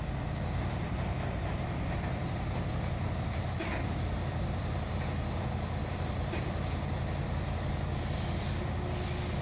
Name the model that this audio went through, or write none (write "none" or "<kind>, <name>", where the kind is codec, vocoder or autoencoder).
none